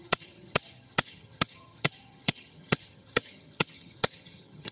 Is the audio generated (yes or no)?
yes